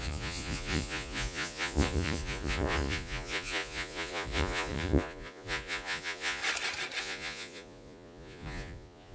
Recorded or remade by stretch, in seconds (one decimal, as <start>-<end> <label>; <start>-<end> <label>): 0.0-6.4 remade; 6.4-7.0 recorded; 7.0-9.1 remade